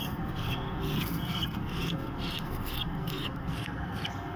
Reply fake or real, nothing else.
fake